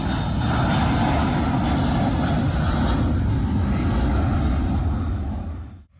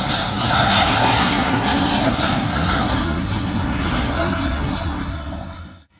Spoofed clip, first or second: second